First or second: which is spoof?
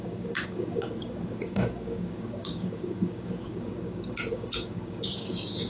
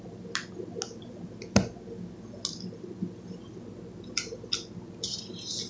first